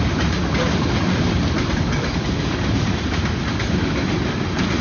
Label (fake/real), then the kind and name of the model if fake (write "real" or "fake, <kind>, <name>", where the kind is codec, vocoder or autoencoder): real